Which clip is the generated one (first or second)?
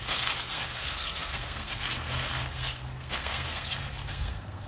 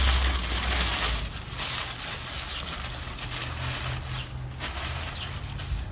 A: first